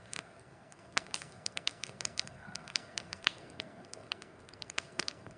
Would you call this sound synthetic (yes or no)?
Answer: yes